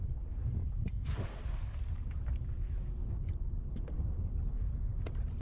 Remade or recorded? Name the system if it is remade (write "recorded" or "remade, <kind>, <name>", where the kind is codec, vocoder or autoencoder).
recorded